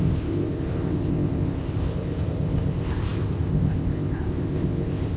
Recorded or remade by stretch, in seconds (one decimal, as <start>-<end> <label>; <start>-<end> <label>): 0.0-5.2 remade